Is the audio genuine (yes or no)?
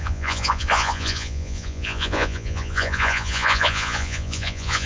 no